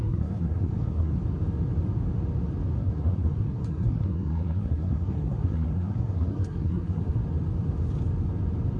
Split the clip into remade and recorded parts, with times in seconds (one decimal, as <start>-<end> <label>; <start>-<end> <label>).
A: 0.0-1.1 remade; 1.1-2.8 recorded; 2.8-7.2 remade; 7.2-8.8 recorded